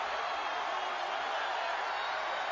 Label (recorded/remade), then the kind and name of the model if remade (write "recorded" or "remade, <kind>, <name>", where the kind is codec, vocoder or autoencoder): recorded